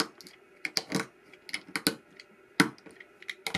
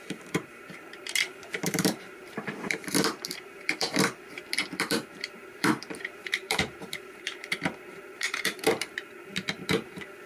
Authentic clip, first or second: first